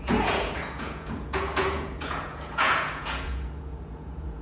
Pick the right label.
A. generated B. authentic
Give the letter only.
A